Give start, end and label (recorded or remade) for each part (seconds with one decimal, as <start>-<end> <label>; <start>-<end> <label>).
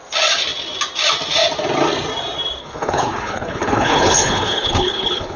0.0-2.6 recorded; 2.6-5.4 remade